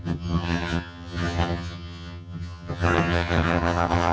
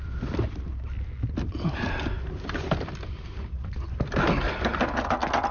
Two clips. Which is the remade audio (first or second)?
first